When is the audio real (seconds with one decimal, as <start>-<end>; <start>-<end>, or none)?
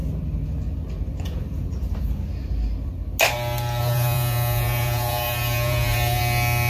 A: 0.0-3.8; 6.2-6.7